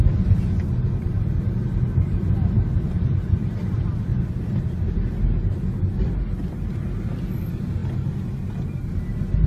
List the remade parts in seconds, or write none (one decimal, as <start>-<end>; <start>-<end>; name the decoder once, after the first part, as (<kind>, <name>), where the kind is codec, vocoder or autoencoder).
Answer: none

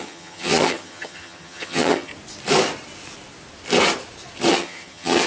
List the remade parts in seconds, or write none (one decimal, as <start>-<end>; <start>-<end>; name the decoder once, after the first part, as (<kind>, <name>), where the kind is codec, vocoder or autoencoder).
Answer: 0.0-2.1 (vocoder, HiFi-GAN); 4.5-5.3